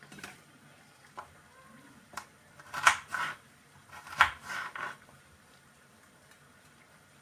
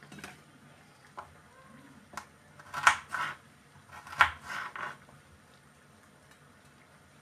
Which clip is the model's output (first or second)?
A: first